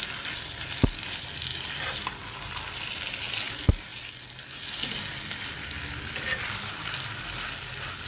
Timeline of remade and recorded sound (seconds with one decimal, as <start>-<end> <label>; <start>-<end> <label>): 0.0-8.1 recorded